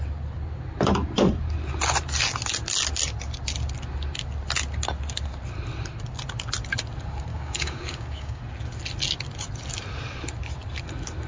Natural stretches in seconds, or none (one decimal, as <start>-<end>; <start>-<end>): 0.0-7.3; 8.4-11.3